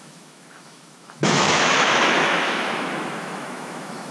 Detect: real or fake fake